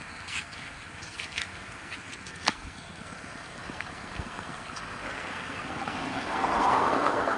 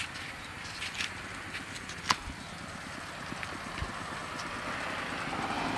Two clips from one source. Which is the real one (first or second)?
second